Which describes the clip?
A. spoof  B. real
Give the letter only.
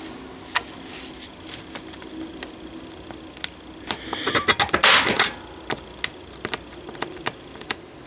B